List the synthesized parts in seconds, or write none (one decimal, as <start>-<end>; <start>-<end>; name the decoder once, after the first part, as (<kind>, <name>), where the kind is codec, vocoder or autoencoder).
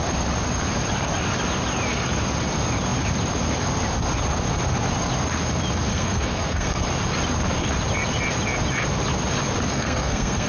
5.9-6.8 (codec, SNAC); 9.7-10.5